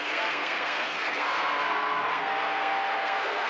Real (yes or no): no